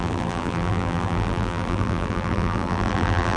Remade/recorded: remade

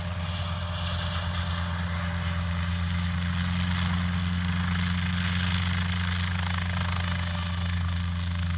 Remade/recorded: recorded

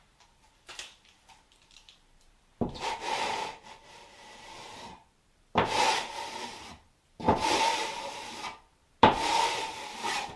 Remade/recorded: remade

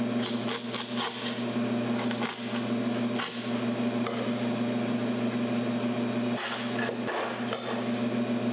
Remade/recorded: recorded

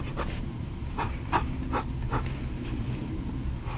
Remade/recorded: recorded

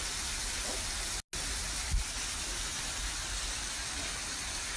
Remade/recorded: recorded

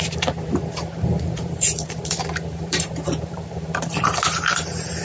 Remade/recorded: remade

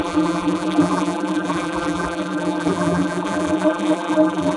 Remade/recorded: remade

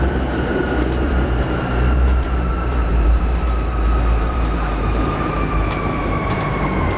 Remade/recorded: remade